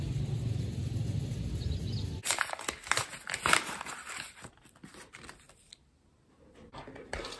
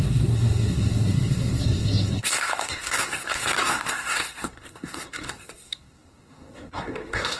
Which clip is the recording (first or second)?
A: first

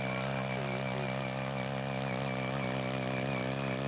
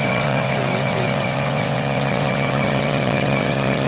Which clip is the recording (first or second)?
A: first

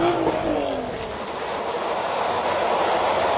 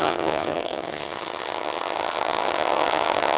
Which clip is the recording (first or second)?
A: first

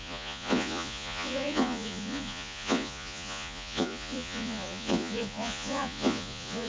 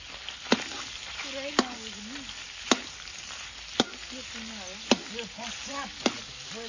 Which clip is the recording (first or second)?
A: second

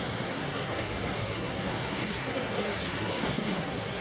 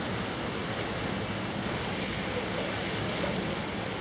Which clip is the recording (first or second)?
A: second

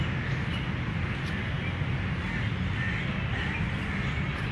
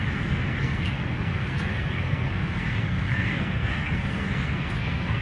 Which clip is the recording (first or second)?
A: first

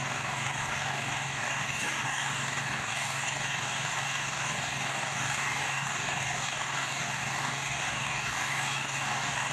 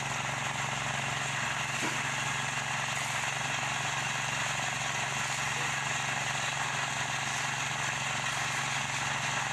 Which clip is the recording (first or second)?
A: second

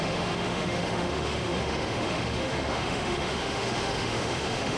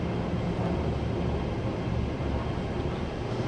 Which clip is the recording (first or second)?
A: second